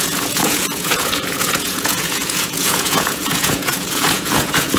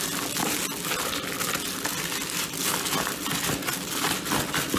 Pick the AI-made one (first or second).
first